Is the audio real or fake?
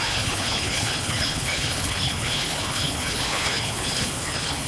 fake